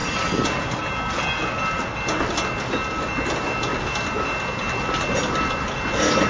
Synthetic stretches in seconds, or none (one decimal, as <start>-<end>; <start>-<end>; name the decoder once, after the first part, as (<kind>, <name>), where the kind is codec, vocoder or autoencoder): none

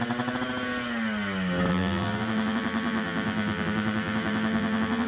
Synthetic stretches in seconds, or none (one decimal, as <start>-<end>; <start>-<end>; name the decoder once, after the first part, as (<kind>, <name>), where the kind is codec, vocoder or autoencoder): 1.7-5.1 (vocoder, BigVGAN v2)

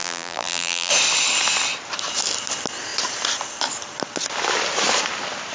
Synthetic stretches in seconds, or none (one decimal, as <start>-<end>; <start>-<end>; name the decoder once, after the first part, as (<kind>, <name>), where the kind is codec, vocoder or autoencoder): 0.0-0.9 (vocoder, BigVGAN v2)

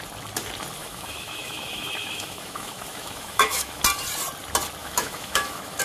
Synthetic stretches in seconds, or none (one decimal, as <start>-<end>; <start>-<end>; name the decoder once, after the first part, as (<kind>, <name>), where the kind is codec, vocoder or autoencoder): 0.8-3.8 (autoencoder, DAC-VAE); 4.8-5.8

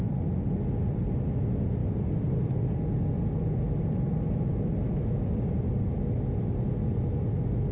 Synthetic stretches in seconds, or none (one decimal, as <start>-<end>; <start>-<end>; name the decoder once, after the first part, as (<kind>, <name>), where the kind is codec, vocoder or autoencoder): none